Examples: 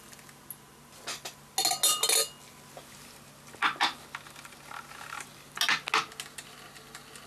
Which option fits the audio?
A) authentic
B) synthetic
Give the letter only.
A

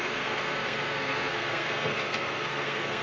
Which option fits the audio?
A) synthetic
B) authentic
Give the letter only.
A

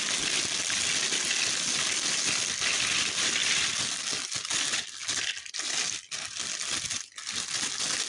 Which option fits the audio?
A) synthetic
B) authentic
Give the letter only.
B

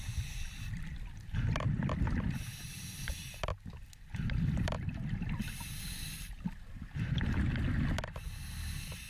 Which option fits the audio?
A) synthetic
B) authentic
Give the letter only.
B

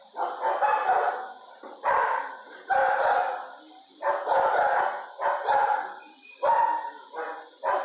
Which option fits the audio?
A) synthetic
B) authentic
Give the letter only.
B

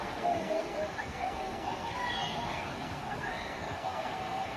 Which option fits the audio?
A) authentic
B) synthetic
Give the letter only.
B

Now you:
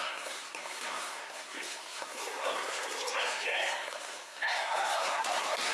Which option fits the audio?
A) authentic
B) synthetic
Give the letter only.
B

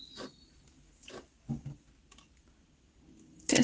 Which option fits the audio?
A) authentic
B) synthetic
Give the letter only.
A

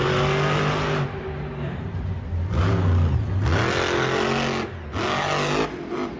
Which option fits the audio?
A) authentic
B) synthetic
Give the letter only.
A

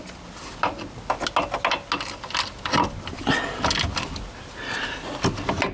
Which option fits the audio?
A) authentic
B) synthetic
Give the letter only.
A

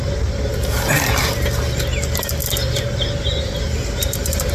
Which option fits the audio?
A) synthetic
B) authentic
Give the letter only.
B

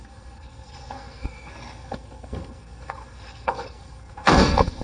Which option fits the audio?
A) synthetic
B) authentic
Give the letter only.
A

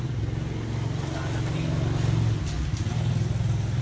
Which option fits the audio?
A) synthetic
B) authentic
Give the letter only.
B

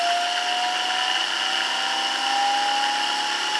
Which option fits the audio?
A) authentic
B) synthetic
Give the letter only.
A